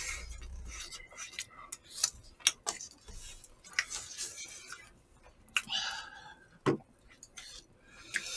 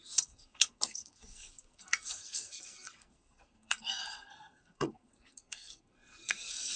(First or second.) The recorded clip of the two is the first